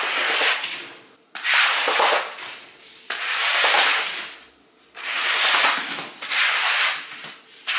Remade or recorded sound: remade